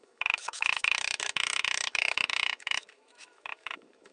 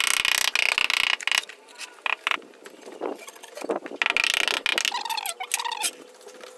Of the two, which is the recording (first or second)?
second